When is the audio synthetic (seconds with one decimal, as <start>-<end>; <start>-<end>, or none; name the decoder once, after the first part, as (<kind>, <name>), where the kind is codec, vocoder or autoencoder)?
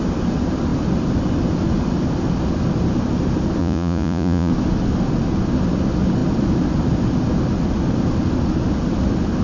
3.6-4.5 (vocoder, Vocos)